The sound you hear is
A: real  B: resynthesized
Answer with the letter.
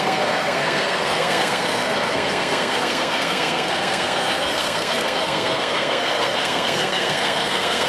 B